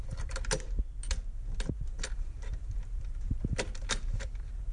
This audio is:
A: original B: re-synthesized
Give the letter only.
A